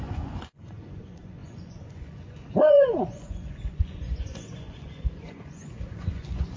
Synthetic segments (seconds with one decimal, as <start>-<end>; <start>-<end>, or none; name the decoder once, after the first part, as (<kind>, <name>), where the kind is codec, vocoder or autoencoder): 0.0-6.6 (vocoder, Vocos)